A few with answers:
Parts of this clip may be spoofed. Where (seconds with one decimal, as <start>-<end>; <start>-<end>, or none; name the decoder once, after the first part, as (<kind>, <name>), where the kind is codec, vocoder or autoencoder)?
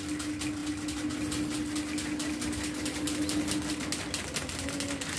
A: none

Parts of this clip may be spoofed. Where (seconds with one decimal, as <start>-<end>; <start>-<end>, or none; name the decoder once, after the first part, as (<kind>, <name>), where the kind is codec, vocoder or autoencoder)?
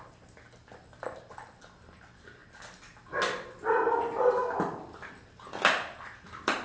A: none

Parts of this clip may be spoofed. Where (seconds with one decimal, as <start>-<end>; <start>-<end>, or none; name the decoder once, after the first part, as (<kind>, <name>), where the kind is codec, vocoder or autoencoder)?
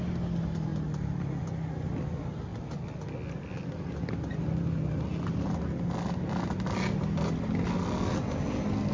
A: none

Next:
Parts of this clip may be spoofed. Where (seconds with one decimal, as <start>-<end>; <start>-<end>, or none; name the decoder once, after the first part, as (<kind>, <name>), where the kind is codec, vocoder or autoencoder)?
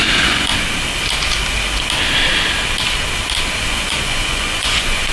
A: 0.0-0.5 (vocoder, Vocos); 3.6-5.1